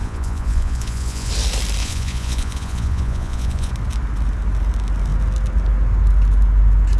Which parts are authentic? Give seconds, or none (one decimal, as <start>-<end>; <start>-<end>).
1.3-1.8; 3.7-7.0